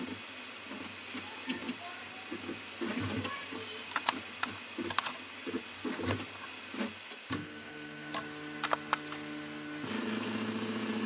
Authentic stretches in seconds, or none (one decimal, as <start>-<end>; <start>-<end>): 0.0-7.4; 8.1-11.1